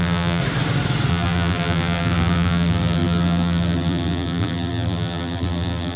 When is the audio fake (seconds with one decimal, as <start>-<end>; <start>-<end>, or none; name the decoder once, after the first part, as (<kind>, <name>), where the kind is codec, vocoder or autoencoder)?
0.0-0.4 (vocoder, BigVGAN v2); 1.1-6.0